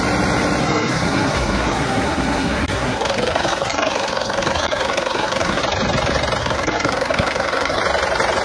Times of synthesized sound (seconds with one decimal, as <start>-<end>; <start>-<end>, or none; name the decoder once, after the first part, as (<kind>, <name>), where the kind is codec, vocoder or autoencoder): 0.6-5.6 (codec, SNAC); 6.4-7.8